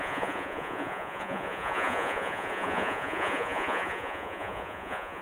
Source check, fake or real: fake